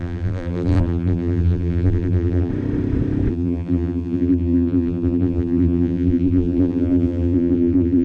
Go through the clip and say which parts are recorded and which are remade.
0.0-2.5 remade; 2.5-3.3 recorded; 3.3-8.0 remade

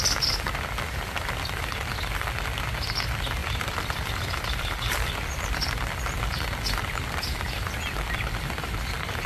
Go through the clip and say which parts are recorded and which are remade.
0.0-3.4 recorded; 3.4-5.1 remade; 5.1-9.3 recorded